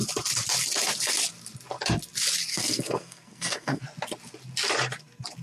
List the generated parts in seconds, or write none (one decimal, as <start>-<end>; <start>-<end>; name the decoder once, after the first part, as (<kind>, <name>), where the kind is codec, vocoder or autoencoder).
2.5-3.8 (codec, SNAC)